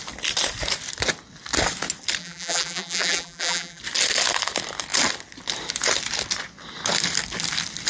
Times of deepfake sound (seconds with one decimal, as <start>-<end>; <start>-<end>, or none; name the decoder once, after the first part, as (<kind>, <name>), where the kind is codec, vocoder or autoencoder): 2.2-3.8 (vocoder, BigVGAN v2)